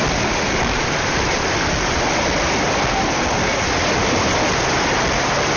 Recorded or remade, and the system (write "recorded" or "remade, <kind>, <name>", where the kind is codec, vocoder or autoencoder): recorded